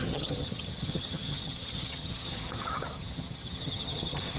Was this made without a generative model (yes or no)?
no